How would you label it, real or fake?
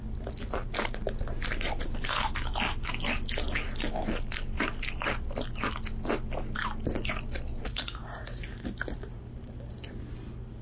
real